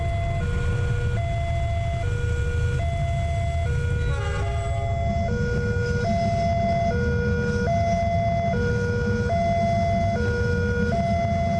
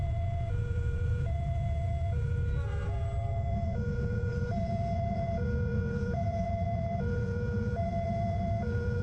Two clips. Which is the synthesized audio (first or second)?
second